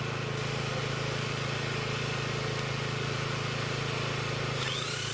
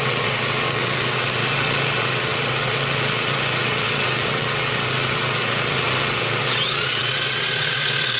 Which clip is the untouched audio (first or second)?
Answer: first